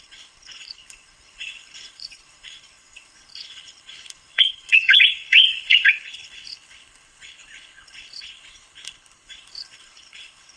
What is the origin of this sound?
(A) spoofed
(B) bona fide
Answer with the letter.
A